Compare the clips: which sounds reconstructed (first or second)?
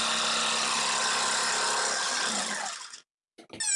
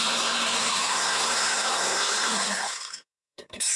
second